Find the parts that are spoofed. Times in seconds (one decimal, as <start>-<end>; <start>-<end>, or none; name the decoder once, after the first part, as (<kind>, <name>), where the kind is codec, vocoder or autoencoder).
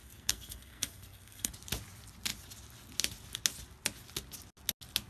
0.0-1.5 (codec, SNAC)